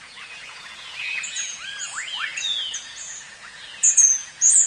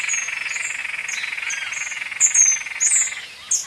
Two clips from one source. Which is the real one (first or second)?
second